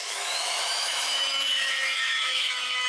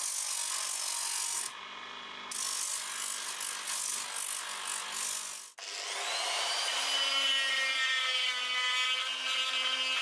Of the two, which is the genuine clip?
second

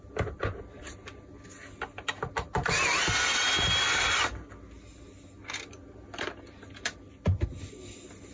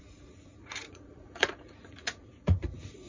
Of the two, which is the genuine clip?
first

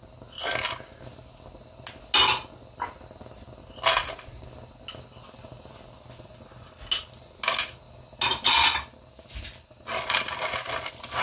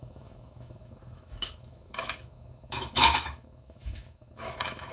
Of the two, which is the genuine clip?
first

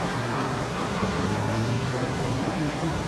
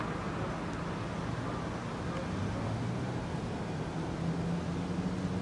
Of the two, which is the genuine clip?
second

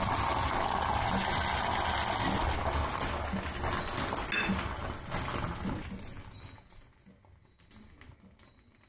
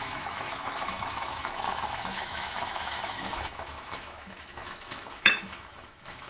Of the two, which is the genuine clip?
first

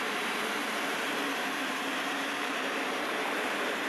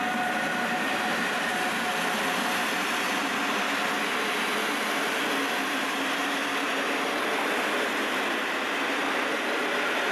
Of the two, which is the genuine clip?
second